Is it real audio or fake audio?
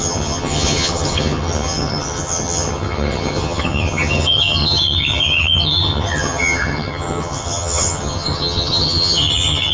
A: fake